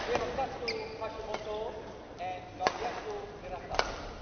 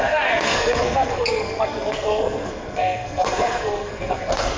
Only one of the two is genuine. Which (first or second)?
first